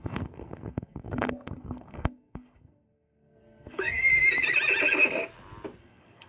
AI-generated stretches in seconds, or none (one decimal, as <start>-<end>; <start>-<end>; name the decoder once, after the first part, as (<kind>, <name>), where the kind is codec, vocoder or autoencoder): 0.0-4.1 (codec, SNAC); 5.8-6.3